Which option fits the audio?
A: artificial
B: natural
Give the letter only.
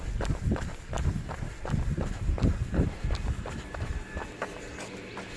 B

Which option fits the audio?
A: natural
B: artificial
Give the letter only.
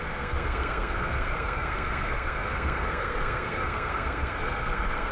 B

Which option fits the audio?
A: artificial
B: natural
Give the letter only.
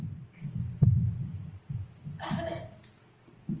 B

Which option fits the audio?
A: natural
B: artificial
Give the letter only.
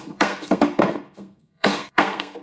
B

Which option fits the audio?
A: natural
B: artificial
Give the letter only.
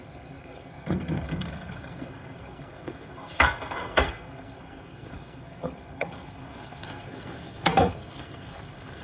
B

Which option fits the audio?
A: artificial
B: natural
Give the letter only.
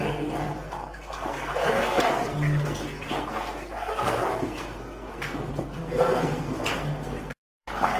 A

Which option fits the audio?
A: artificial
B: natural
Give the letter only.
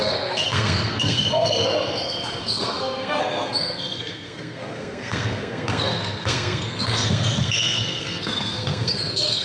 A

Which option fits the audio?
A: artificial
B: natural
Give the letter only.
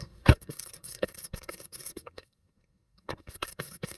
A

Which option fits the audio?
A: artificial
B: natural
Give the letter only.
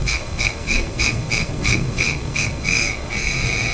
A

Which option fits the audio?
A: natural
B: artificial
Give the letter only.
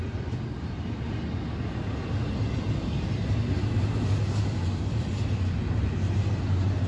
A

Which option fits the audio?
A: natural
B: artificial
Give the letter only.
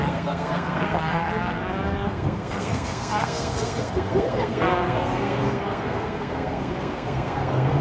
B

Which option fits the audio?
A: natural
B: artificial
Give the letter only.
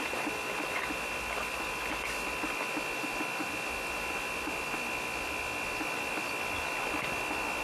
A